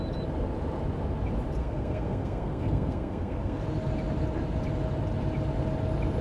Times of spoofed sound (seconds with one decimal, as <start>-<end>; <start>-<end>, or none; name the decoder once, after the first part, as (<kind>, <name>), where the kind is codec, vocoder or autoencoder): 1.6-3.6 (codec, SNAC)